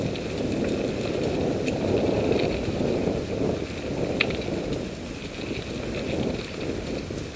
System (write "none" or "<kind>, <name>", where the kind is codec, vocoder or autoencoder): none